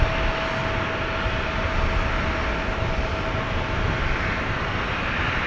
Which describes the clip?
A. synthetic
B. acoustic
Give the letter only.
B